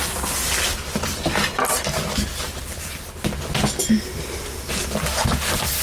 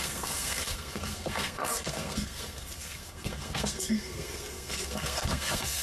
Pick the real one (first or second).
first